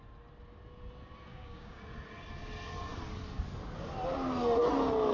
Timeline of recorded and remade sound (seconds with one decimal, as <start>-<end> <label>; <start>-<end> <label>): 0.0-1.3 recorded; 1.3-1.8 remade; 1.8-5.1 recorded